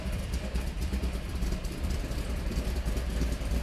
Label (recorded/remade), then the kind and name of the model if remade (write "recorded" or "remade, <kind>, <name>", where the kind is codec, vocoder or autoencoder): remade, vocoder, BigVGAN v2